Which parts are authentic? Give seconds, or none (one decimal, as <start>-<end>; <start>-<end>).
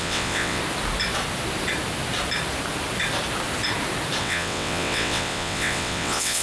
0.6-4.2